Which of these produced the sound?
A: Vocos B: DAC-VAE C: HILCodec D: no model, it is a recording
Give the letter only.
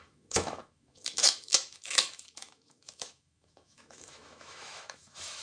B